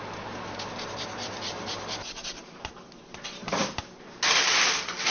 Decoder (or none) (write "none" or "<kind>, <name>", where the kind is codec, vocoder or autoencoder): none